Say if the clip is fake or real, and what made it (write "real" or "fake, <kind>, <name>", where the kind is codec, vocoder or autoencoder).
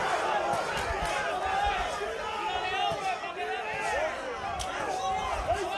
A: real